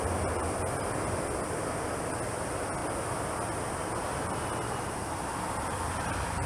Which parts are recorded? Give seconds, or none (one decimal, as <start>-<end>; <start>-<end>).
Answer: 2.8-3.7